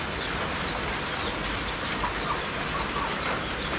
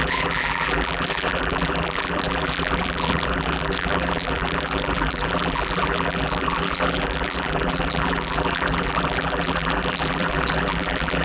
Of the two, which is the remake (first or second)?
second